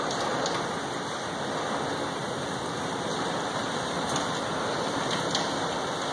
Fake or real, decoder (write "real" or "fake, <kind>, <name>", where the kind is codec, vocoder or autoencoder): real